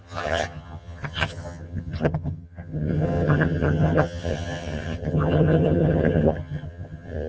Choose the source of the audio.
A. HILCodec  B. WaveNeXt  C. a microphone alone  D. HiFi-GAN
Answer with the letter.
D